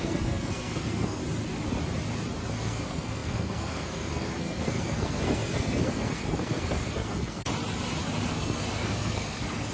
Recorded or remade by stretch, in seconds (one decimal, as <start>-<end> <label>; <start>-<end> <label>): 0.0-1.2 remade; 1.2-2.5 recorded; 2.5-7.5 remade; 7.5-8.3 recorded; 8.3-9.7 remade